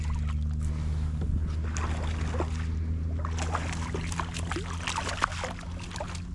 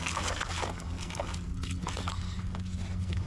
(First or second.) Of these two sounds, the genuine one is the first